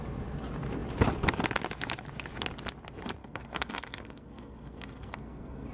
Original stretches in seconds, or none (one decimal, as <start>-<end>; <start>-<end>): 0.0-3.2